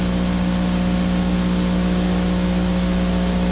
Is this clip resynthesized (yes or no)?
no